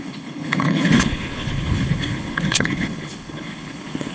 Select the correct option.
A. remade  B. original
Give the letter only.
A